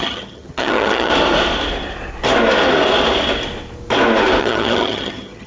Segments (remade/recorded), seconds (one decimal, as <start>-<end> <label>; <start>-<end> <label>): 0.0-1.1 remade; 1.1-4.4 recorded; 4.4-5.5 remade